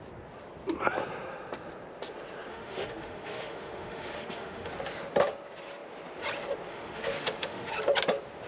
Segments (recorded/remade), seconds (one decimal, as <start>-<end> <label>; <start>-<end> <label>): 0.0-2.5 recorded; 2.5-4.7 remade; 4.7-6.7 recorded; 6.7-7.7 remade; 7.7-8.5 recorded